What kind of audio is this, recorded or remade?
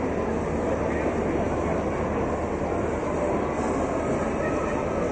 recorded